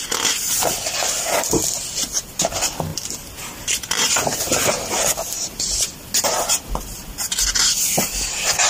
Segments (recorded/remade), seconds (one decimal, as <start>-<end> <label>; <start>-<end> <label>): 0.0-8.7 recorded